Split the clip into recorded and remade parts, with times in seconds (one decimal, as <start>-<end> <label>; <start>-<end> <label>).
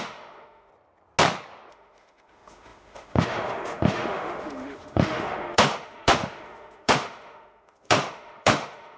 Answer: 0.0-0.7 remade; 0.7-1.7 recorded; 1.7-9.0 remade